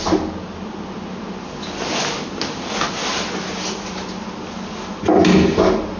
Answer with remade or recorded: recorded